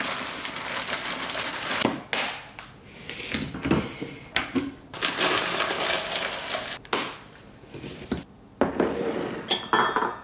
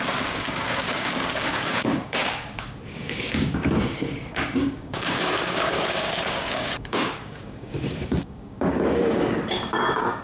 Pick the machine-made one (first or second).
second